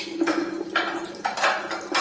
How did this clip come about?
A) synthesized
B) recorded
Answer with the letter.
B